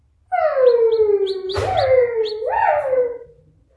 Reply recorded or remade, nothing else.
recorded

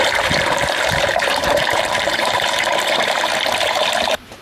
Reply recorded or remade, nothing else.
remade